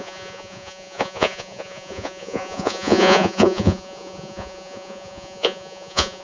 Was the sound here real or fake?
fake